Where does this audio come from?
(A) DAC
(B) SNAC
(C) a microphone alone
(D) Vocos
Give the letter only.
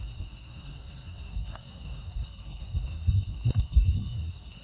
B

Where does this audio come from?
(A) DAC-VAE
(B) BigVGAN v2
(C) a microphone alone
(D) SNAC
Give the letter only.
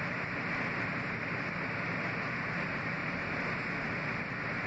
C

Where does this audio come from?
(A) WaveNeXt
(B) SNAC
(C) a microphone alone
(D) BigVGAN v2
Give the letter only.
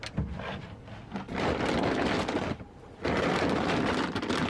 C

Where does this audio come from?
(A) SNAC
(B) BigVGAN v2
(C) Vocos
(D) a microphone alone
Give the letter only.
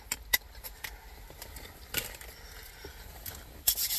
D